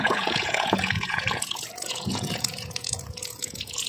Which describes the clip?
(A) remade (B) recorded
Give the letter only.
A